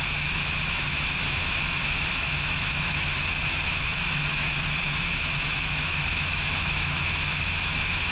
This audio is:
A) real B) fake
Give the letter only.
B